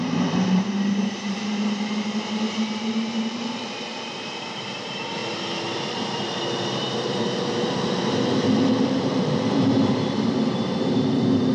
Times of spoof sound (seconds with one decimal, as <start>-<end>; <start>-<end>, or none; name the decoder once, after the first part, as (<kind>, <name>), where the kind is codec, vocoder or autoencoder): 0.0-5.2 (vocoder, BigVGAN v2); 6.7-11.5